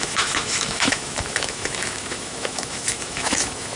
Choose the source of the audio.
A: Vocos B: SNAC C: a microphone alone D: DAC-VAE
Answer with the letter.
D